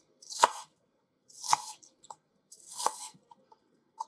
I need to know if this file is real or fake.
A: fake